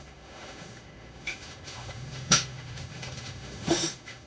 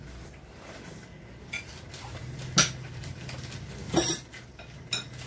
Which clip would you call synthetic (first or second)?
first